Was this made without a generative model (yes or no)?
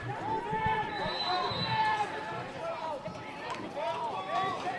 no